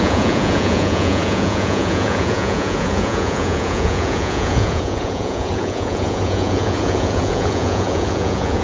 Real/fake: fake